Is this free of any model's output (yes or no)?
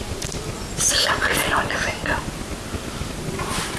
yes